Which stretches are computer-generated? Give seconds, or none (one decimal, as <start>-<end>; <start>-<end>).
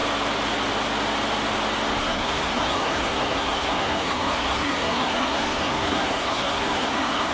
2.0-7.3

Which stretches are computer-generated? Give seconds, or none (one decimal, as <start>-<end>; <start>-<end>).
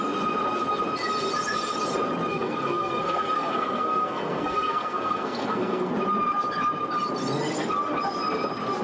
2.3-5.9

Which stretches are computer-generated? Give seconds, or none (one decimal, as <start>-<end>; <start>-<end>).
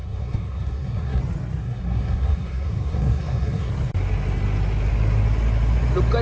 0.0-1.2; 1.6-3.7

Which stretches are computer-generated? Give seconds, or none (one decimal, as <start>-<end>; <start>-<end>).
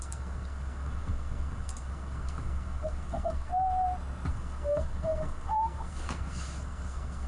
0.0-3.5; 4.3-7.3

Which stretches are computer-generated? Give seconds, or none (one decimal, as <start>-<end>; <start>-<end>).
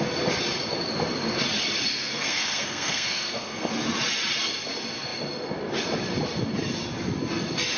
1.9-3.7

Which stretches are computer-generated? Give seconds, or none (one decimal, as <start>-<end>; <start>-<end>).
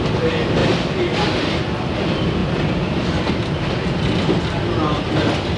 none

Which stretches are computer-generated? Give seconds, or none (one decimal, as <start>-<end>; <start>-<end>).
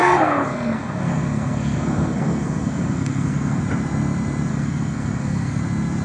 0.0-3.6; 4.5-5.6